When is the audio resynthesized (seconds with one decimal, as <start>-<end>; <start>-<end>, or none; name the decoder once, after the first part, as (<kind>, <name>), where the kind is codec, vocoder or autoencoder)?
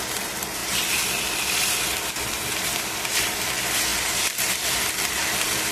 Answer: 0.0-5.7 (vocoder, BigVGAN v2)